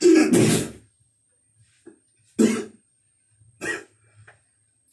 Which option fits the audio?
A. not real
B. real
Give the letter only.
B